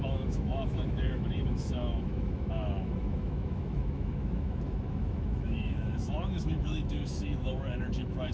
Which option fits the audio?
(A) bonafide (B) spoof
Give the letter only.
B